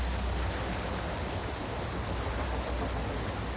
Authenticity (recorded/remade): recorded